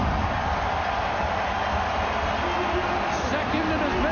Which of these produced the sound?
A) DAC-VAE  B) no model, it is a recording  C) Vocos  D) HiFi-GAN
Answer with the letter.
B